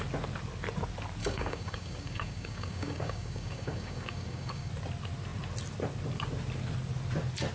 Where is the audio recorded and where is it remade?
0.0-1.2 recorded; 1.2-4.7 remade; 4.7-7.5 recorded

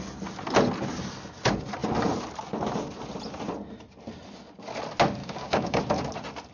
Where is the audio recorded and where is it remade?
0.0-5.2 recorded; 5.2-5.8 remade; 5.8-6.5 recorded

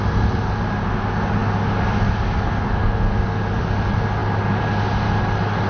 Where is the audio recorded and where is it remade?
0.0-5.7 recorded

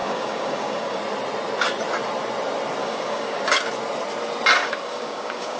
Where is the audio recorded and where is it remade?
0.0-1.0 remade; 1.0-2.8 recorded; 2.8-3.4 remade; 3.4-4.6 recorded; 4.6-5.6 remade

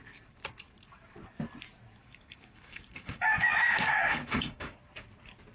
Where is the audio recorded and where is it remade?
0.0-2.0 recorded; 2.0-4.8 remade; 4.8-5.5 recorded

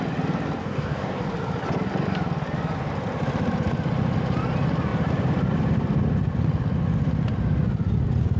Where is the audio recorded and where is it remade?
0.0-0.6 recorded; 0.6-1.2 remade; 1.2-8.4 recorded